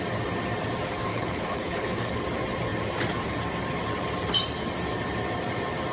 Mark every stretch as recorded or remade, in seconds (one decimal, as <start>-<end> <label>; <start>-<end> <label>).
0.0-1.1 recorded; 1.1-2.2 remade; 2.2-5.9 recorded